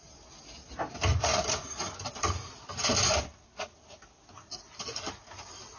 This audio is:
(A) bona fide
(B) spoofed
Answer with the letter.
A